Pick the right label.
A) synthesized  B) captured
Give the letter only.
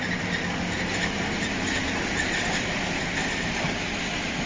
B